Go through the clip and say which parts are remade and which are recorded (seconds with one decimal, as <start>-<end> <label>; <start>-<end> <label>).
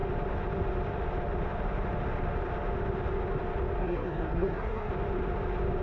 0.0-3.8 recorded; 3.8-4.9 remade; 4.9-5.8 recorded